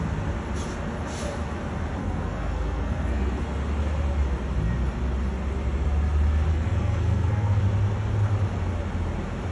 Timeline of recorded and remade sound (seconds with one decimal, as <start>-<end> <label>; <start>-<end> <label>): 0.0-2.0 recorded; 2.0-3.4 remade; 3.4-6.5 recorded; 6.5-7.6 remade; 7.6-9.5 recorded